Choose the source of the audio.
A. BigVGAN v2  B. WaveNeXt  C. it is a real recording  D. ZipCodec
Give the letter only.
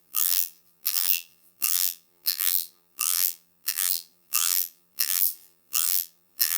A